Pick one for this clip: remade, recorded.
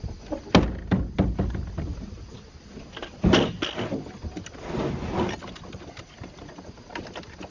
recorded